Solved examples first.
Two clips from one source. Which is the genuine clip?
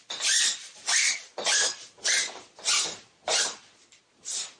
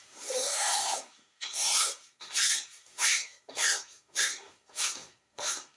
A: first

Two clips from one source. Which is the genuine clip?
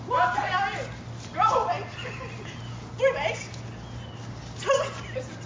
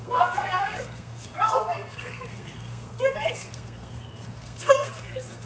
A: first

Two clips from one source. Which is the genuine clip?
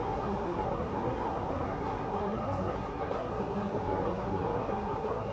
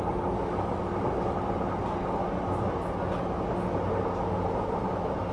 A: second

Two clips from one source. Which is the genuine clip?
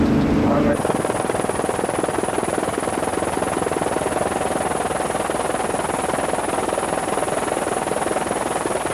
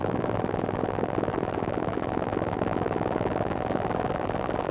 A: first